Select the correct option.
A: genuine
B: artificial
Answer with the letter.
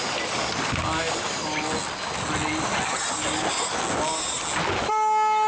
A